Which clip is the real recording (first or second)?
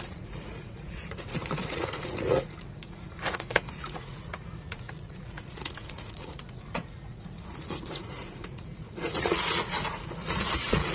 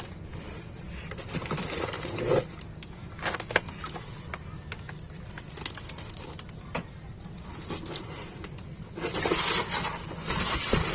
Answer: second